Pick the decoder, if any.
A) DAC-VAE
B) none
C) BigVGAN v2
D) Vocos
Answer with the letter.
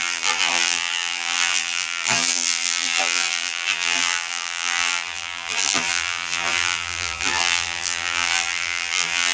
C